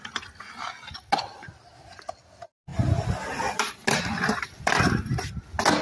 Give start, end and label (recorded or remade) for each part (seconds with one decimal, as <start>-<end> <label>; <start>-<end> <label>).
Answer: 0.0-5.8 recorded